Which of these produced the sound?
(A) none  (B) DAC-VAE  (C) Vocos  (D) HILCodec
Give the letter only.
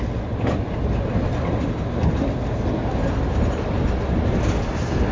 A